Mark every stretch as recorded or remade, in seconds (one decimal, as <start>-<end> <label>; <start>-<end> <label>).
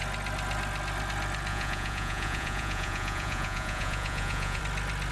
0.0-1.5 recorded; 1.5-4.6 remade; 4.6-5.1 recorded